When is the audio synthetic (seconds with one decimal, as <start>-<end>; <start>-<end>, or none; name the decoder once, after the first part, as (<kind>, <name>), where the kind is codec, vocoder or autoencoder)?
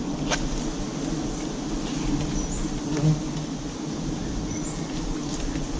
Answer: none